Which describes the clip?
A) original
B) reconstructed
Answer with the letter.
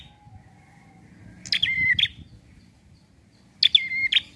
A